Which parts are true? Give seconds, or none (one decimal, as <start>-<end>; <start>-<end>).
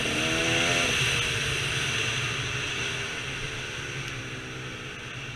0.0-5.4